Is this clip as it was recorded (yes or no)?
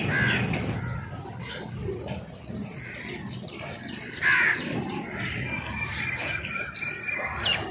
yes